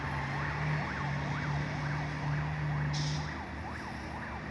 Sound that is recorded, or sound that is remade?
recorded